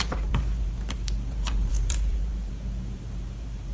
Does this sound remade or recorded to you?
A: remade